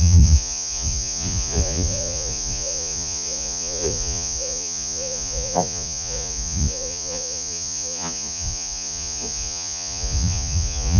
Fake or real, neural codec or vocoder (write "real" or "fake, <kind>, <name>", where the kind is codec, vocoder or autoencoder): fake, vocoder, Vocos